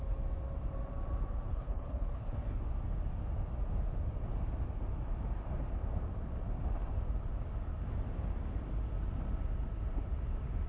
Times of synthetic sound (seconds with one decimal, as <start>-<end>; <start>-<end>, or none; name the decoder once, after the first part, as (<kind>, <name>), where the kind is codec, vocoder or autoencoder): 1.5-2.6 (codec, HILCodec)